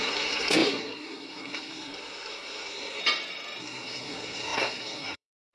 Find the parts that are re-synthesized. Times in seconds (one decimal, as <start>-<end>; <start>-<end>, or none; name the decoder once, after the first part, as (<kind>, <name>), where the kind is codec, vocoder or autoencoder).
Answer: 0.0-3.0 (codec, SNAC); 3.6-5.5